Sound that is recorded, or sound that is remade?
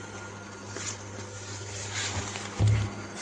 recorded